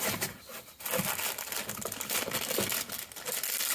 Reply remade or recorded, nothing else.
recorded